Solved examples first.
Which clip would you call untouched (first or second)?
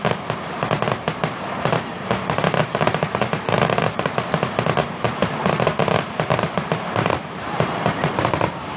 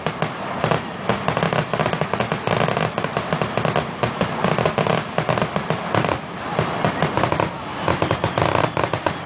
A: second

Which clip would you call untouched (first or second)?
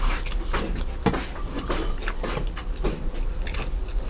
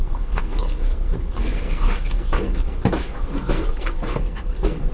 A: first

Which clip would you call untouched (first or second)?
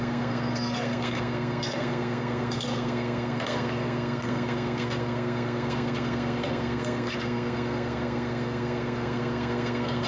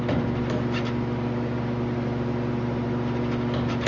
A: second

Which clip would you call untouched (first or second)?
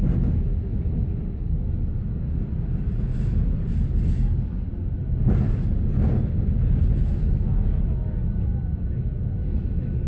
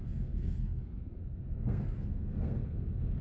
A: first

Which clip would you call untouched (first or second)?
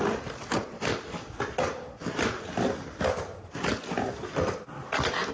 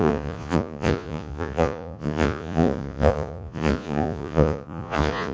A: first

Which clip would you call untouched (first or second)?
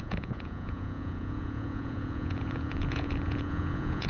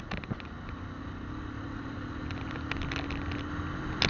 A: second